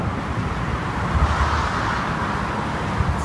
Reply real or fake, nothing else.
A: real